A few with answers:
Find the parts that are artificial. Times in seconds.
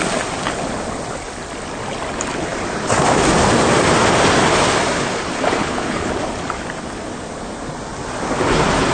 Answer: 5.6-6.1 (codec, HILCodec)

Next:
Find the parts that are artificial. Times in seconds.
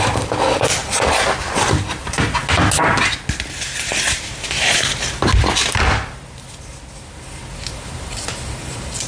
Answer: none